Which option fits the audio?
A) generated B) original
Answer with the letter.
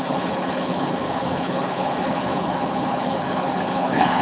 A